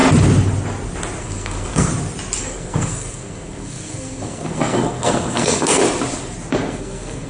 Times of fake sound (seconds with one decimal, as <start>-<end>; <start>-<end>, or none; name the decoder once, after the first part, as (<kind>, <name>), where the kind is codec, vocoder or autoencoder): 1.2-1.9 (codec, SNAC); 2.4-5.8; 6.5-7.3